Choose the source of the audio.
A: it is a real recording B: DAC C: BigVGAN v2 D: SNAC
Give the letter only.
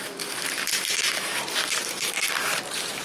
C